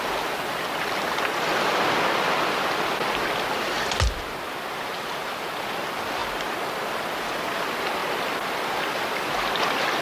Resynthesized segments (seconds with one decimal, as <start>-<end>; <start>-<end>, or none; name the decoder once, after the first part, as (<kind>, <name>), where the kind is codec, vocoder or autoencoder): none